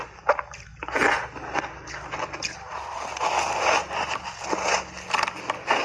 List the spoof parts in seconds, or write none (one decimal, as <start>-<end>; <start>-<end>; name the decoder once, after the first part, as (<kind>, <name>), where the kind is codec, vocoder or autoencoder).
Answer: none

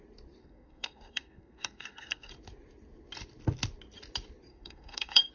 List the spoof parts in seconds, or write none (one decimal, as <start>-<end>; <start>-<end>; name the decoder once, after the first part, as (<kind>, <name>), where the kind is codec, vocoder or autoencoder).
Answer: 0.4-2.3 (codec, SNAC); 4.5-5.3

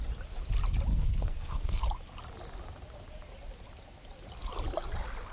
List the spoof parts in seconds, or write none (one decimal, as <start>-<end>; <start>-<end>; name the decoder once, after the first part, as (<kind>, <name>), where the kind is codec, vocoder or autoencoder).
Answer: 0.9-1.8 (codec, SNAC)

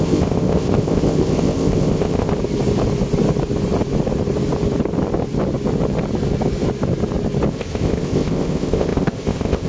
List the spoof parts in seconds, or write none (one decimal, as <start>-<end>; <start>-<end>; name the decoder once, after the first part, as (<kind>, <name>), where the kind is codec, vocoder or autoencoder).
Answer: 0.0-2.3 (codec, ZipCodec); 7.5-9.7